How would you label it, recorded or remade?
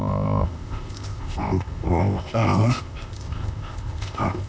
remade